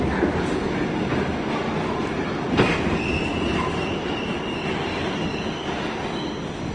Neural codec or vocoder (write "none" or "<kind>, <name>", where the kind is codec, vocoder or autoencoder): none